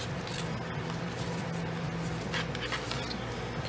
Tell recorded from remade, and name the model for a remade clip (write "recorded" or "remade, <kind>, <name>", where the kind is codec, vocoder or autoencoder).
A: recorded